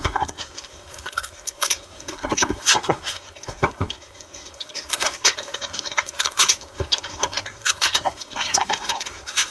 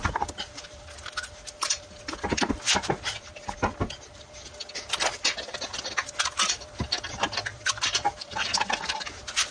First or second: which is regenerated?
first